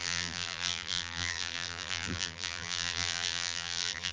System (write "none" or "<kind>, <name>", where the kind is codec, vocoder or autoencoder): vocoder, BigVGAN v2